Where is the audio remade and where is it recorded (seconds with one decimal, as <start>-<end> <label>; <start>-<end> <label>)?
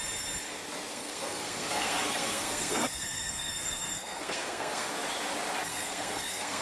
0.0-0.9 recorded; 0.9-4.9 remade; 4.9-5.7 recorded; 5.7-6.6 remade